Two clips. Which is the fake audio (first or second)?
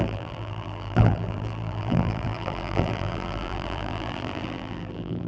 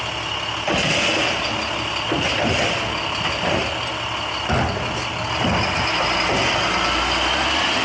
first